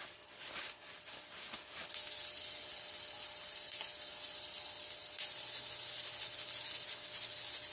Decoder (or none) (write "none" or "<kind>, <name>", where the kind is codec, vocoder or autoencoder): none